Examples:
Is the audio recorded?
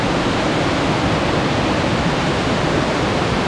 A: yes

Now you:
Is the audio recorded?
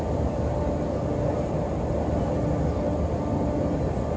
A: yes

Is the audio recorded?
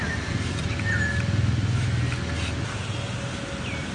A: yes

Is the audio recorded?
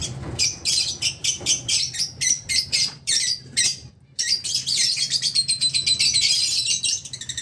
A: no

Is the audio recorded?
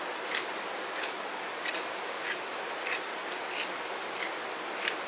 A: yes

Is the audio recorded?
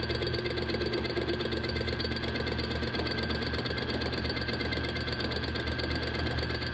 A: yes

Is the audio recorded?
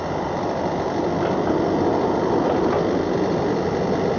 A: yes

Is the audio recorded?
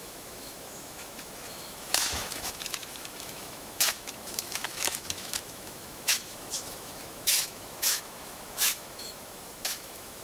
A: no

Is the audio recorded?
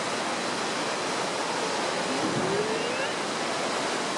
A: yes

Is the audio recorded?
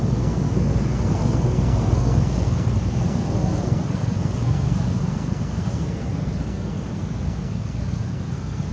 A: no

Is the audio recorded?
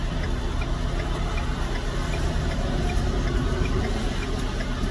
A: yes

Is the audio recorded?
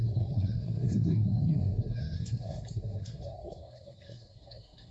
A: no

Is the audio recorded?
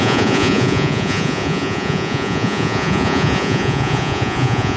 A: no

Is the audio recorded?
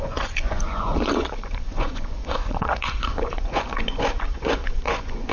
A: no